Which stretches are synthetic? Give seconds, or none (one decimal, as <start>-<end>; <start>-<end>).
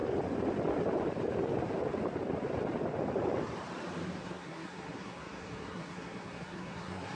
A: 4.2-7.1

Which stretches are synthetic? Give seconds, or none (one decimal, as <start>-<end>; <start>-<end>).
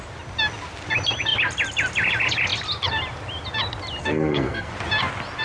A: 4.0-4.7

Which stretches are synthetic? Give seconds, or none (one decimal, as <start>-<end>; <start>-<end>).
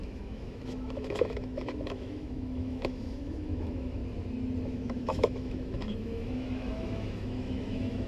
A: 0.0-4.0; 4.6-8.1